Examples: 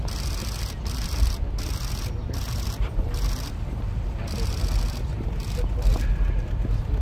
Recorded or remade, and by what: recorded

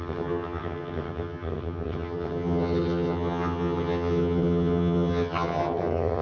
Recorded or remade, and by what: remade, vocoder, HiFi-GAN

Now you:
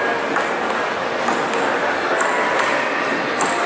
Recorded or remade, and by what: recorded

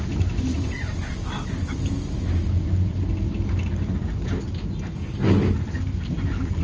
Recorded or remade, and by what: recorded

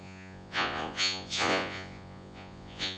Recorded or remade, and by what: remade, vocoder, Vocos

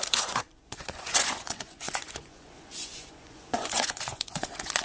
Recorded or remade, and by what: remade, vocoder, Vocos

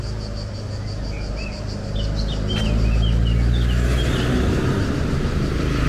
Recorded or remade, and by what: recorded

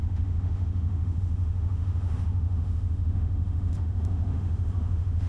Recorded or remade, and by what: remade, autoencoder, DAC-VAE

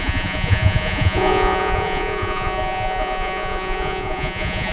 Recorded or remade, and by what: remade, vocoder, Vocos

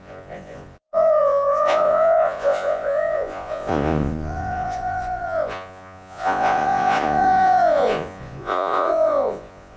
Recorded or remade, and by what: remade, vocoder, Vocos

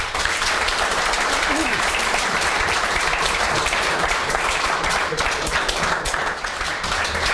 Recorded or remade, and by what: remade, vocoder, BigVGAN v2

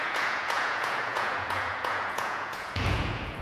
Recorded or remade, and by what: remade, vocoder, Vocos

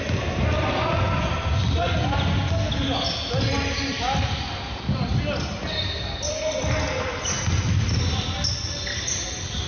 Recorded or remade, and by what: recorded